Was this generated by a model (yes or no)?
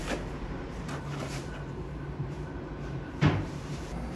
yes